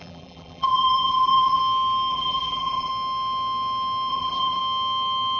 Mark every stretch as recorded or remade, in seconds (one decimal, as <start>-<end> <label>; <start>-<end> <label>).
0.0-1.6 remade; 1.6-2.1 recorded; 2.1-2.9 remade; 2.9-4.1 recorded; 4.1-4.6 remade; 4.6-5.4 recorded